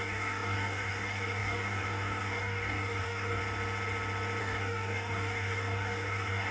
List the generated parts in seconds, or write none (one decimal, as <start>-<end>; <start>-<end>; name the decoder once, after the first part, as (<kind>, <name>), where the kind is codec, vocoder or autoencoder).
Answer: 0.0-3.4 (codec, DAC); 4.4-6.5